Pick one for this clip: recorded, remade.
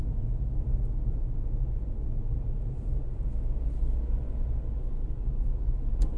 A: recorded